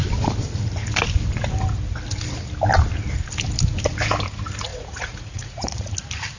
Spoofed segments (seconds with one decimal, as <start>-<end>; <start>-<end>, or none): 4.7-5.9

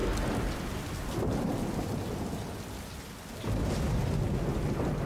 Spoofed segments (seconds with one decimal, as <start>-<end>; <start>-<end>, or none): 3.6-4.2